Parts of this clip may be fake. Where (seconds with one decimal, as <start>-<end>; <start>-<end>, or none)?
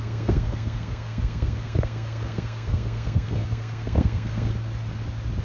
0.0-4.5